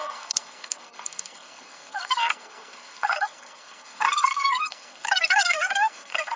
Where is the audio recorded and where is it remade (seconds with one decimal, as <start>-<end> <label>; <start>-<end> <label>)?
0.0-6.4 remade